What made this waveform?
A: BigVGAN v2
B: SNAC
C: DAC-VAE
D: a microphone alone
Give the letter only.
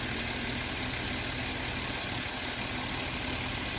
D